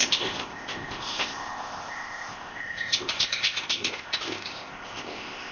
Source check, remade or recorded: remade